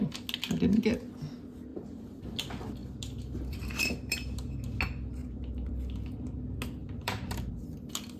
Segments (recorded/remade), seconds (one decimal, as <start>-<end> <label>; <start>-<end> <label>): 0.0-1.7 recorded; 1.7-2.2 remade; 2.2-2.8 recorded; 2.8-4.5 remade; 4.5-5.2 recorded; 5.2-5.7 remade; 5.7-6.8 recorded; 6.8-7.5 remade; 7.5-8.2 recorded